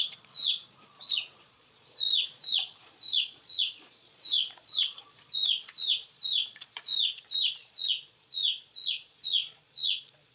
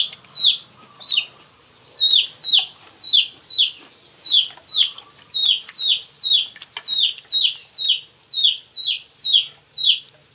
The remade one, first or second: first